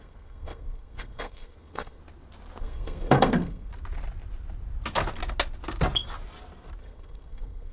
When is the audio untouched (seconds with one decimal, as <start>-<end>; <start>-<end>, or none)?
2.0-2.6; 3.7-6.8